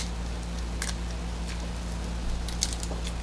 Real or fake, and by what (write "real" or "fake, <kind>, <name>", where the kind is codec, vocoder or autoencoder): real